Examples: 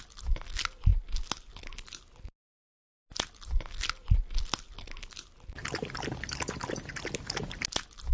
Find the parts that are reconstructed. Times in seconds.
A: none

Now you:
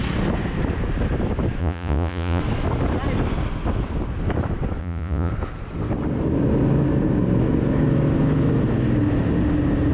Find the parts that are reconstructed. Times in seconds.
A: 1.6-2.4; 4.8-5.3

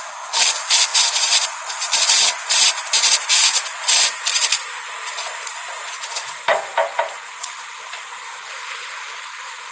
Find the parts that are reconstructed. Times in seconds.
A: 0.0-0.9; 1.5-4.6; 5.5-9.7

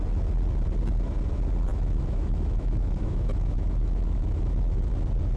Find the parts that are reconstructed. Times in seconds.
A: 1.7-4.9

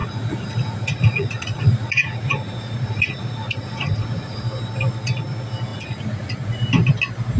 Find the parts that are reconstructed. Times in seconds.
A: 0.0-4.4; 5.7-6.6